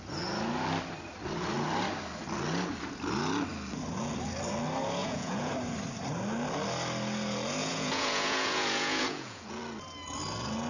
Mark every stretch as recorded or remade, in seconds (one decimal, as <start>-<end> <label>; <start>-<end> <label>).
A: 0.0-5.0 recorded; 5.0-5.5 remade; 5.5-7.6 recorded; 7.6-9.6 remade; 9.6-10.7 recorded